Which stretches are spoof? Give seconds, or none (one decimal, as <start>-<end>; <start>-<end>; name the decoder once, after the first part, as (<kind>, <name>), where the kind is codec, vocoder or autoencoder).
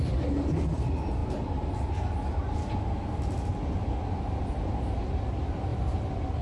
none